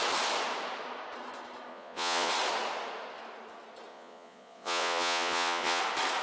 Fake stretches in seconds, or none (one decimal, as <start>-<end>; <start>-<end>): 1.7-2.3; 3.9-5.8